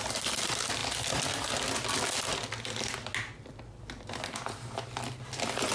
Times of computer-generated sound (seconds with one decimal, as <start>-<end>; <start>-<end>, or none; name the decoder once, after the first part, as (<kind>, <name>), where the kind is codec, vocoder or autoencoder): none